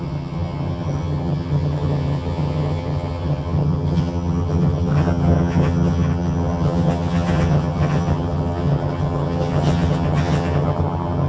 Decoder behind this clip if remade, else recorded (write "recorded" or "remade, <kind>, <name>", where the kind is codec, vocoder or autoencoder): remade, vocoder, HiFi-GAN